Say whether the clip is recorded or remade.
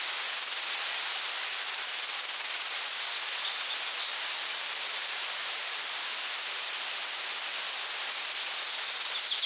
recorded